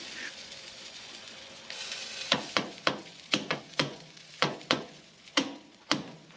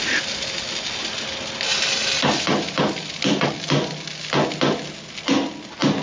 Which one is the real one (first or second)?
second